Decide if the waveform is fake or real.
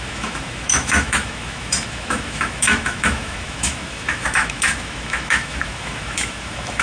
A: fake